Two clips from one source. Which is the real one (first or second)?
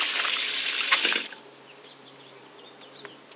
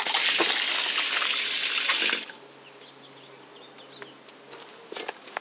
second